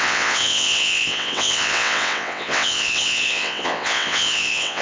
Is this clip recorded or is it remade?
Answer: remade